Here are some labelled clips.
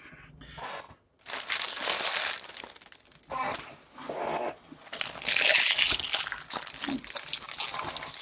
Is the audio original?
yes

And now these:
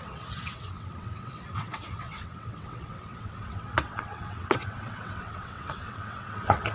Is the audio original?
no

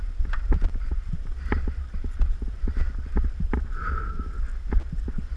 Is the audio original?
yes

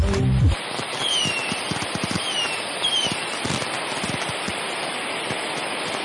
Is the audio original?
yes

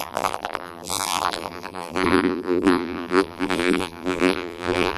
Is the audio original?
no